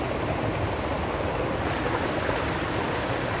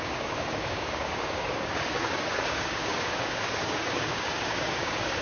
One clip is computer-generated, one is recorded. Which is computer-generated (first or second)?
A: second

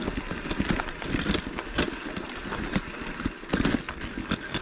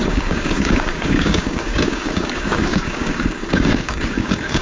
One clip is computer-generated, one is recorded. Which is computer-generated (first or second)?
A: second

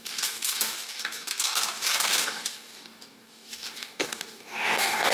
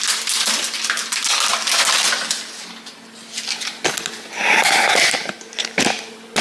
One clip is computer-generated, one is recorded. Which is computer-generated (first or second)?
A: first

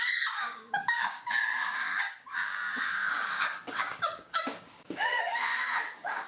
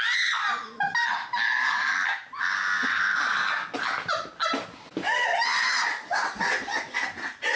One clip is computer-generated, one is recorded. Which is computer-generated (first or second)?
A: first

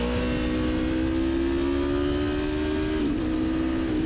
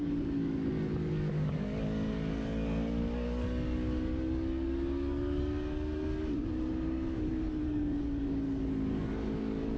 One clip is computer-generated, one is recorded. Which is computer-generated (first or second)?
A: second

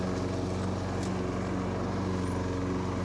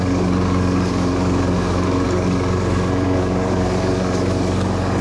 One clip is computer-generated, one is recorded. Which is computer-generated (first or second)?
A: second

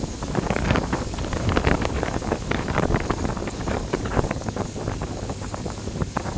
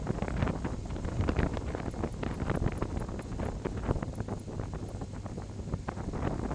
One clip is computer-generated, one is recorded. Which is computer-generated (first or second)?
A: first